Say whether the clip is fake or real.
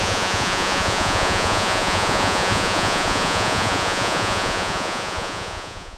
fake